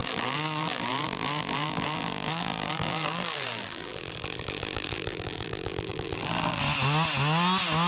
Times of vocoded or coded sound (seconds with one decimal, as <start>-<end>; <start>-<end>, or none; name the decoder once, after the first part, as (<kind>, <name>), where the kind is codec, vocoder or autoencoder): 0.0-6.6 (vocoder, BigVGAN v2)